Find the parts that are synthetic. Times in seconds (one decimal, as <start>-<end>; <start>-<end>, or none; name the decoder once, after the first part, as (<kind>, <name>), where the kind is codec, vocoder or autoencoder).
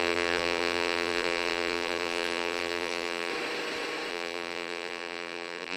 0.0-3.3 (vocoder, BigVGAN v2); 4.1-5.8